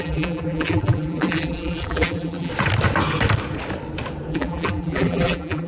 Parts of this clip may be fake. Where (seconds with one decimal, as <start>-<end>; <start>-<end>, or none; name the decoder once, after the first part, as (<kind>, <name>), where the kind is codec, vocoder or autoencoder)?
0.0-2.5 (vocoder, BigVGAN v2); 4.3-5.7

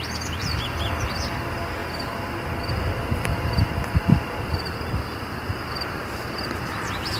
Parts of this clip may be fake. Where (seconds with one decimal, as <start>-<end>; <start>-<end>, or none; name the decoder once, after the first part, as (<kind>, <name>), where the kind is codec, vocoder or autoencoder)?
none